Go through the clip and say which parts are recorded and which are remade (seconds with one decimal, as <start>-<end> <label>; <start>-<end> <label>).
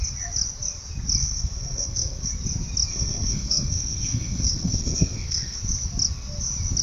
0.0-1.2 recorded; 1.2-2.3 remade; 2.3-2.9 recorded; 2.9-5.6 remade; 5.6-6.8 recorded